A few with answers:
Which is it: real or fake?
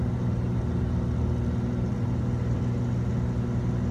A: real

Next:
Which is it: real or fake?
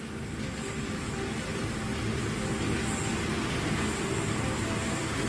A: real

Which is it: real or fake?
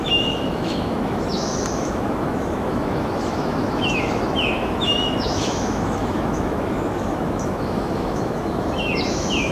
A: fake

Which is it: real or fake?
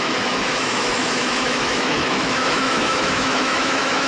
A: fake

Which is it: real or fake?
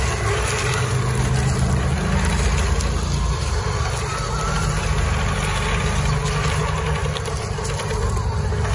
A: real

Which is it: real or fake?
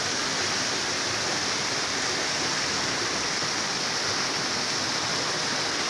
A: real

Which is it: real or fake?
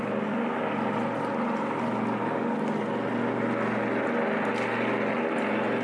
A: real